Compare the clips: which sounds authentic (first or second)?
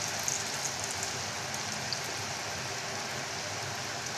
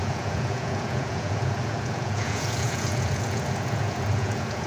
first